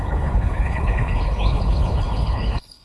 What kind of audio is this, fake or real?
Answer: fake